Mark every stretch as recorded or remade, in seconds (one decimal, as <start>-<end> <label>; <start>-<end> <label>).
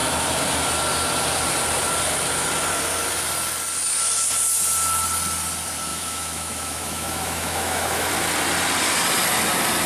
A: 0.0-5.9 recorded; 5.9-8.1 remade; 8.1-9.9 recorded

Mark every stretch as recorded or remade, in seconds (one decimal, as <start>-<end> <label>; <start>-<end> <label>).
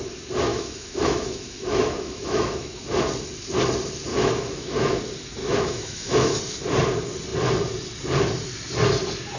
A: 0.0-0.5 recorded; 0.5-2.8 remade; 2.8-4.1 recorded; 4.1-5.0 remade; 5.0-5.4 recorded; 5.4-6.4 remade; 6.4-9.4 recorded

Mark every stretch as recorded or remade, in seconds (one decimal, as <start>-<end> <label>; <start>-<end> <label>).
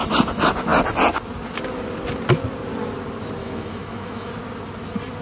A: 0.0-3.4 recorded; 3.4-4.3 remade; 4.3-5.2 recorded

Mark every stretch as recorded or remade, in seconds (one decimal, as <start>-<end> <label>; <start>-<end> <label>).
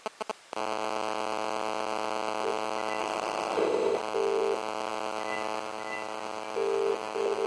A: 0.0-3.0 recorded; 3.0-4.0 remade; 4.0-7.5 recorded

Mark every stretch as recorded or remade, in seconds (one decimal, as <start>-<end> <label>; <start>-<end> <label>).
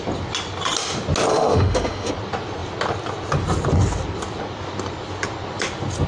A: 0.0-1.3 recorded; 1.3-2.1 remade; 2.1-6.1 recorded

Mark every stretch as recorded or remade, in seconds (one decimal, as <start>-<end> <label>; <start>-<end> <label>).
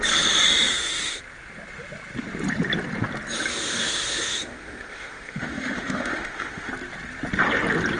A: 0.0-0.7 recorded; 0.7-1.2 remade; 1.2-3.5 recorded; 3.5-6.7 remade; 6.7-8.0 recorded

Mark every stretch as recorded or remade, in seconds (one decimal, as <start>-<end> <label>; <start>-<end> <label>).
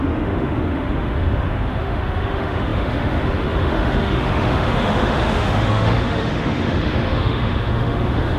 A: 0.0-8.4 remade